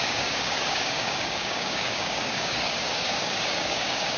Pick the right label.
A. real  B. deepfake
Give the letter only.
B